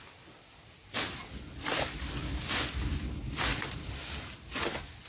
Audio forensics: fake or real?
real